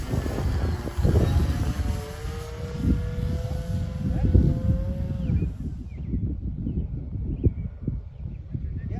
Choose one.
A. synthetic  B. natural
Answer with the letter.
B